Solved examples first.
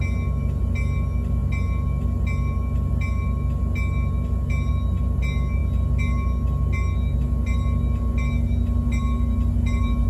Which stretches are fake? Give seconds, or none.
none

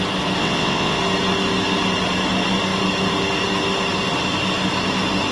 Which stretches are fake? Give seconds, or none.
0.4-1.0

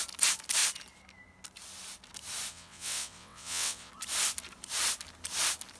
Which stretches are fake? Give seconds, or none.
2.5-3.9

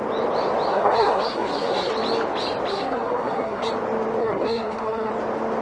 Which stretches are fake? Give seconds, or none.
0.7-1.9; 2.7-3.7; 4.2-5.1

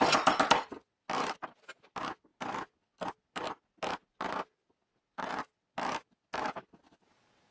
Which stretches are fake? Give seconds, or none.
none

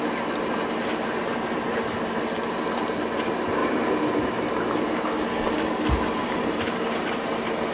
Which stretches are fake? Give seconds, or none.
1.3-1.8; 6.2-7.1

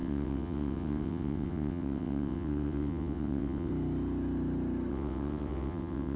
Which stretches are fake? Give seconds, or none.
0.0-3.7; 4.9-6.2